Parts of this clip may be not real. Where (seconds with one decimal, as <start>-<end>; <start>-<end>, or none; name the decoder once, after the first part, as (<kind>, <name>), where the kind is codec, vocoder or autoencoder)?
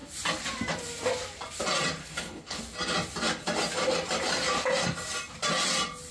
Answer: 2.0-2.6 (codec, HILCodec)